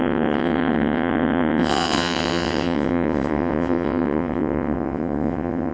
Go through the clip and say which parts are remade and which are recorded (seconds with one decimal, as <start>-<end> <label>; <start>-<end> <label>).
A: 0.0-5.7 remade